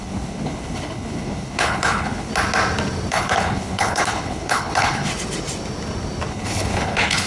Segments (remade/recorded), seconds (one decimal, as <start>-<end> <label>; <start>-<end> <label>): 0.0-2.3 remade; 2.3-3.1 recorded; 3.1-5.1 remade; 5.1-6.3 recorded; 6.3-7.3 remade